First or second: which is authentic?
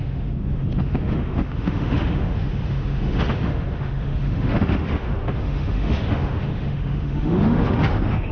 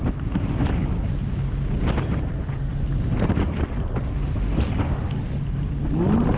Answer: second